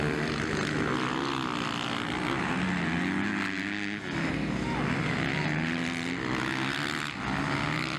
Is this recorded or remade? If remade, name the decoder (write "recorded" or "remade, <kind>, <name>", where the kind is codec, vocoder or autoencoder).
recorded